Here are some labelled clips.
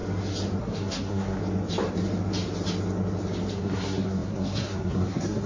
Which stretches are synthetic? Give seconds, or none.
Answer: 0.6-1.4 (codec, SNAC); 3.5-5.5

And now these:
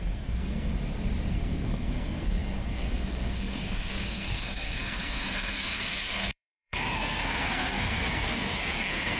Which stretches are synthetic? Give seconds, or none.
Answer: 0.0-0.7 (codec, SNAC); 1.3-9.2

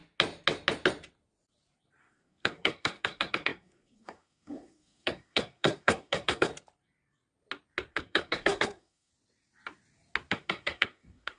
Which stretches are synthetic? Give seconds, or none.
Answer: 2.0-6.5 (codec, SNAC); 7.9-9.1; 10.3-11.4

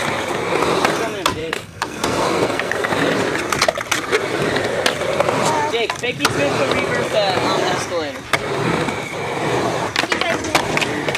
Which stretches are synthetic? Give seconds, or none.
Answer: 1.4-2.9 (codec, SNAC)

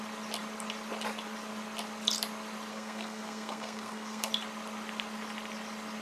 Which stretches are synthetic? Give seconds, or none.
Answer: 2.7-4.3 (codec, SNAC)

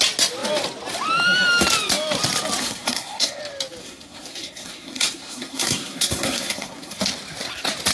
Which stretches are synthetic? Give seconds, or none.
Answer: 2.6-3.4 (codec, SNAC); 3.8-7.0

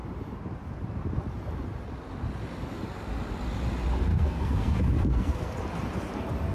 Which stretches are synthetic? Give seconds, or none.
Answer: 4.1-5.5 (codec, SNAC)

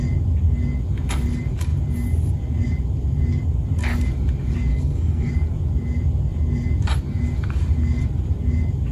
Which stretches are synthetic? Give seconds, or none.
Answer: 4.7-5.3 (codec, SNAC)